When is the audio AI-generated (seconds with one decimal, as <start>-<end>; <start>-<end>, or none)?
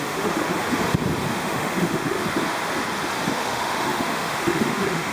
0.0-0.5; 1.3-2.2; 3.3-5.1